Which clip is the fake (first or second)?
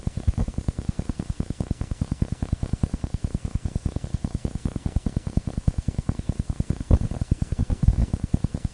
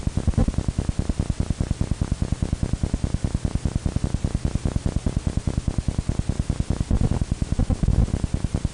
first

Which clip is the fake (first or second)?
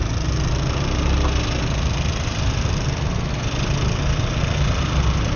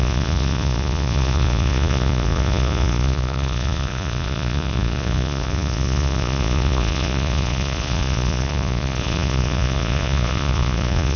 second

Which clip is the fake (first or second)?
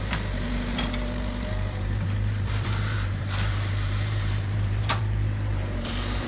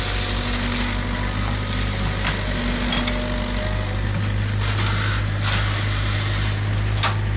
first